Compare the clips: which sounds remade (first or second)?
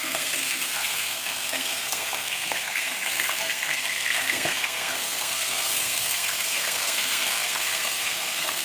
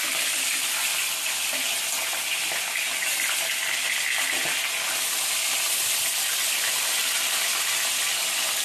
first